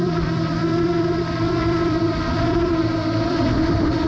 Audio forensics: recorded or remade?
remade